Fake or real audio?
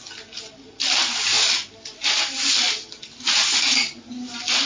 real